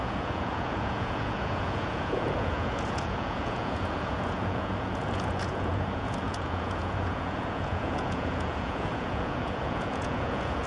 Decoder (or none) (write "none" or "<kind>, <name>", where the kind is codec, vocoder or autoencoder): vocoder, Vocos